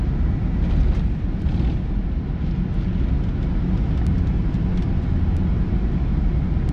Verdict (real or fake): real